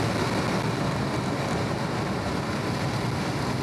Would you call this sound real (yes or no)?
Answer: yes